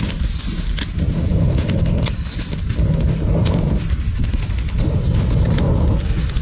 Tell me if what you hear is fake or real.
real